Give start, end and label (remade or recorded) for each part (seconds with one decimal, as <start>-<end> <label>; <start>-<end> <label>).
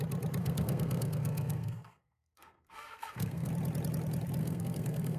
0.0-0.4 recorded; 0.4-3.5 remade; 3.5-4.4 recorded; 4.4-5.2 remade